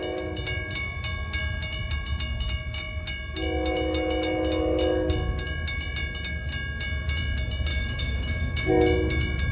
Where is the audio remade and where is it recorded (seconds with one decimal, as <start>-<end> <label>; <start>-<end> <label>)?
0.0-7.7 recorded; 7.7-8.7 remade; 8.7-9.5 recorded